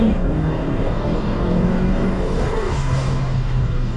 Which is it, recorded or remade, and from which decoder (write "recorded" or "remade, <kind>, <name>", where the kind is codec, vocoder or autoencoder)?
remade, codec, DAC